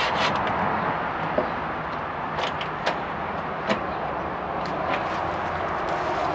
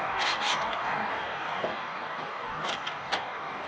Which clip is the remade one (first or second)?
second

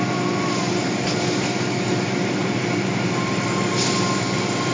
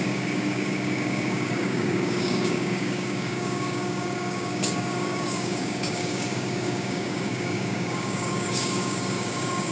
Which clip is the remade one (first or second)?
second